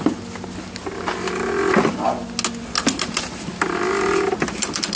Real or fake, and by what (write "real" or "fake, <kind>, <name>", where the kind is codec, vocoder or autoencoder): real